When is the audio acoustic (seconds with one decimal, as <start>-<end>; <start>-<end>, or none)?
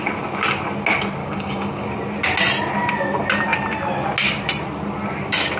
0.0-1.2; 1.9-5.6